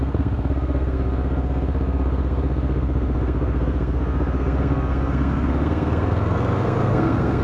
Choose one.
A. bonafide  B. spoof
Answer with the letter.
B